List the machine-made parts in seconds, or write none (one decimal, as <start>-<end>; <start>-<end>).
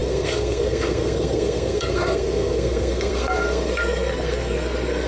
0.0-5.1